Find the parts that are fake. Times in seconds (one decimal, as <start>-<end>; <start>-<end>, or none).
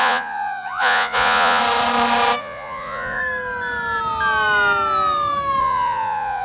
0.0-1.6; 2.4-3.2; 5.6-6.4